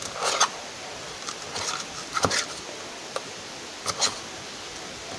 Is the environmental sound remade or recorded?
recorded